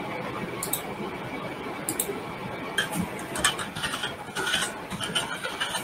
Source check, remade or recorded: recorded